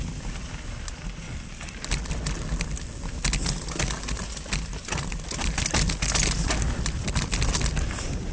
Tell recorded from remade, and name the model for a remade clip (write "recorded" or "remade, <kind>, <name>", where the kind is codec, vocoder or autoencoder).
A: recorded